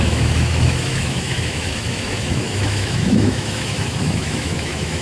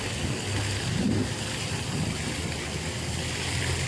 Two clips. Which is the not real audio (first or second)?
first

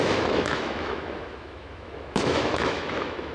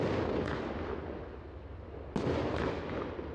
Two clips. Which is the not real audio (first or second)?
first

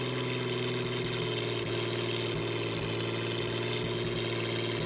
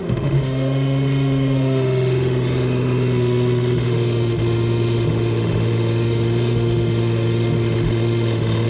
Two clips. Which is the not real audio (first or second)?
second